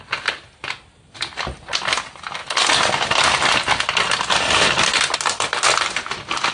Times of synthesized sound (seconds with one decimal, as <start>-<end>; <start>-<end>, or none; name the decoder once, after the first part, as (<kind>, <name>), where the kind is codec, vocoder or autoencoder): none